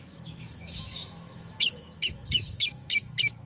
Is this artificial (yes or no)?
yes